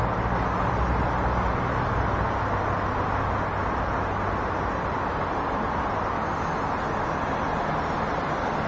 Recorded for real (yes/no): yes